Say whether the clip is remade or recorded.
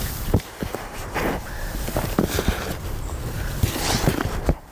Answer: remade